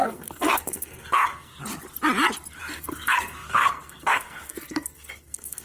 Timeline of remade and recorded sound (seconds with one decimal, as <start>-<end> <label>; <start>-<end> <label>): 0.0-1.5 remade; 1.5-2.6 recorded; 2.6-5.6 remade